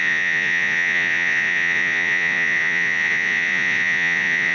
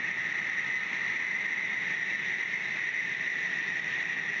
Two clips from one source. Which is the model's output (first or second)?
first